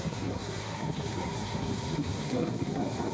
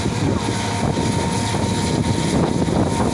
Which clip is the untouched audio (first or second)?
second